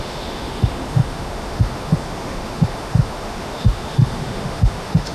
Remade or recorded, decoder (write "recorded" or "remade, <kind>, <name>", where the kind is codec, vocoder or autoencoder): remade, autoencoder, DAC-VAE